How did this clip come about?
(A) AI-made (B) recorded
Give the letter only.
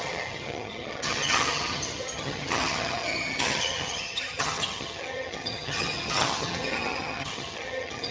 A